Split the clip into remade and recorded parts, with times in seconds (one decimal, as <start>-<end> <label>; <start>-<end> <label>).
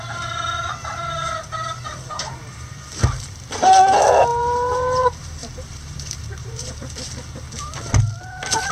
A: 0.0-4.3 recorded; 4.3-5.0 remade; 5.0-5.4 recorded; 5.4-6.7 remade; 6.7-8.7 recorded